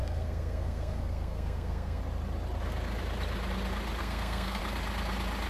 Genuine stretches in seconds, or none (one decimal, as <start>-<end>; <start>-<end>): 2.0-4.0; 4.6-5.5